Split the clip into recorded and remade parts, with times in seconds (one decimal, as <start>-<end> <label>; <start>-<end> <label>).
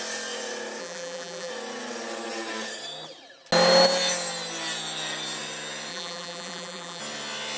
0.0-0.8 recorded; 0.8-1.5 remade; 1.5-5.9 recorded; 5.9-7.0 remade; 7.0-7.6 recorded